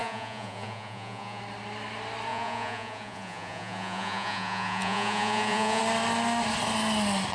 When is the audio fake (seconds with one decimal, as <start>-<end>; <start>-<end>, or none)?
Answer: 0.0-1.4; 2.3-5.8